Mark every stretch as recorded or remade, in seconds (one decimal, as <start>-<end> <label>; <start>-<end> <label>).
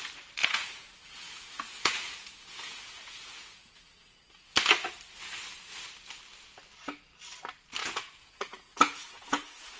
0.0-0.4 recorded; 0.4-4.3 remade; 4.3-7.8 recorded; 7.8-9.8 remade